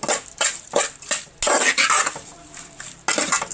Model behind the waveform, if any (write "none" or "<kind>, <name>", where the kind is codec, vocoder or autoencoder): none